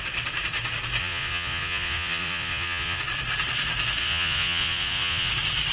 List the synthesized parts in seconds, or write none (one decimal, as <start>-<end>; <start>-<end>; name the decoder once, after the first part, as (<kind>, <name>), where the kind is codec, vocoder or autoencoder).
1.0-3.0 (vocoder, Vocos); 4.0-5.3